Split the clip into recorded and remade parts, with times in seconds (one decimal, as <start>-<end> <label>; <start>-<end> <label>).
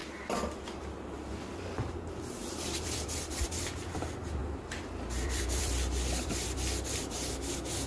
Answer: 0.0-0.8 remade; 0.8-2.4 recorded; 2.4-3.1 remade; 3.1-4.4 recorded; 4.4-7.3 remade; 7.3-7.9 recorded